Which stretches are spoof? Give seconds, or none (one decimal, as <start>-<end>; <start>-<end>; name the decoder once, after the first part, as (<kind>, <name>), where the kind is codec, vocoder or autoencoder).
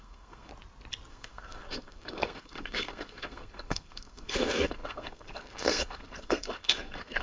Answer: 0.0-0.5 (codec, SNAC); 1.1-7.2